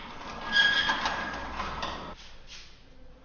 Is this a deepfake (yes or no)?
no